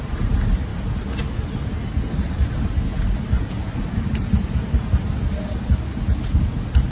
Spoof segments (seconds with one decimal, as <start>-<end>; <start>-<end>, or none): none